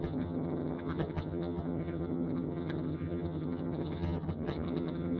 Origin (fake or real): fake